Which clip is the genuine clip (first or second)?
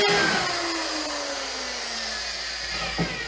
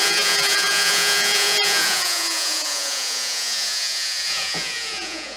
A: first